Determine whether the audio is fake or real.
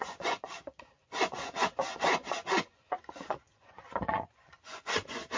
fake